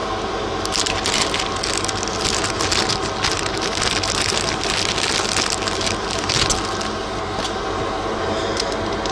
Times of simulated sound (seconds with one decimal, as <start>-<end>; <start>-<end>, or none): none